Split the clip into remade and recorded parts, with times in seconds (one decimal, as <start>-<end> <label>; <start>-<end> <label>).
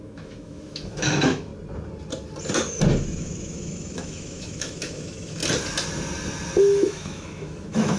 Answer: 0.0-1.5 remade; 1.5-3.0 recorded; 3.0-5.4 remade; 5.4-6.6 recorded; 6.6-8.0 remade